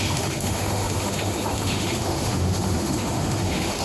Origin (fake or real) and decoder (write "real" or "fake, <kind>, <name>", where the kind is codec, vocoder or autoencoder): fake, autoencoder, DAC-VAE